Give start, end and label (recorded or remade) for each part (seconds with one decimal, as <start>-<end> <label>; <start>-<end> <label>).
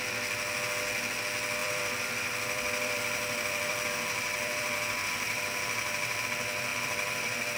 0.0-1.6 recorded; 1.6-6.2 remade; 6.2-6.7 recorded; 6.7-7.6 remade